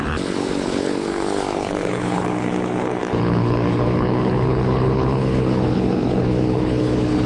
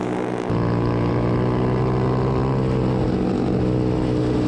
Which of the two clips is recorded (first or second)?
second